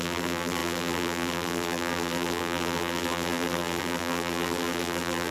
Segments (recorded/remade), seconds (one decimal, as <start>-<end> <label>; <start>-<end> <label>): 0.0-5.3 remade